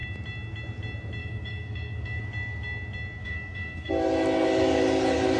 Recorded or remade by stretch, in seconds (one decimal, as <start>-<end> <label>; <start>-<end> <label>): 0.0-1.2 recorded; 1.2-2.2 remade; 2.2-3.2 recorded; 3.2-3.9 remade; 3.9-5.4 recorded